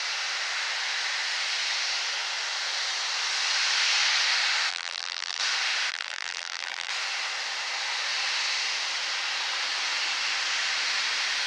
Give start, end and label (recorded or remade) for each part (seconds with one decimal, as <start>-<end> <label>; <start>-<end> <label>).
0.0-4.7 recorded; 4.7-5.4 remade; 5.4-5.9 recorded; 5.9-6.9 remade; 6.9-11.5 recorded